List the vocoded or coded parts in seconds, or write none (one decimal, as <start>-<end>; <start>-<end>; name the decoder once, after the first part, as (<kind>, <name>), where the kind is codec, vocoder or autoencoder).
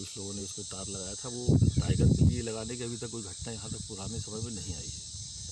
none